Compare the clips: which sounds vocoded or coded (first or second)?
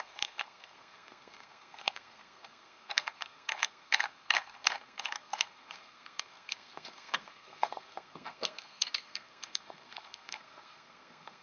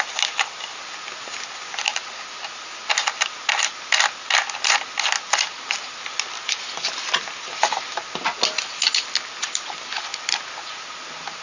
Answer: first